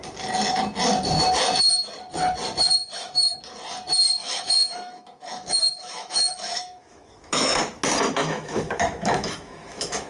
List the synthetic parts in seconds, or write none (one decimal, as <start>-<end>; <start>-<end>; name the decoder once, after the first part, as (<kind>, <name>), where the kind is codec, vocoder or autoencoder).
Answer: 2.8-3.4 (autoencoder, DAC-VAE); 4.2-7.6; 8.2-10.1